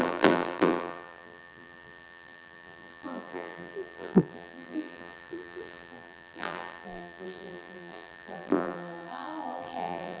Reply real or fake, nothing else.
fake